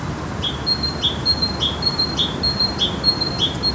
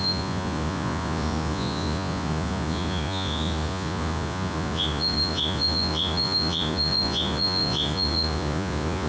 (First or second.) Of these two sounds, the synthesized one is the second